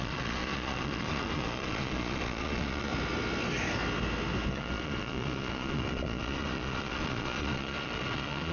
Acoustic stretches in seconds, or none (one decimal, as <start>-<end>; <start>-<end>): 2.9-4.5